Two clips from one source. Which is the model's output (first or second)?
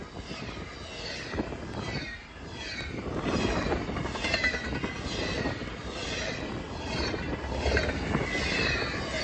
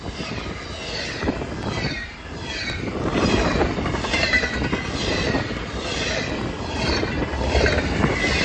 second